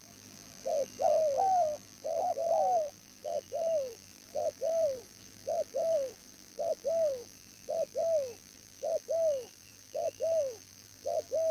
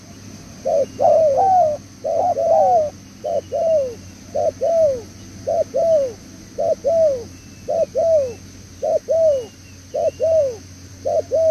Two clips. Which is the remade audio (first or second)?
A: first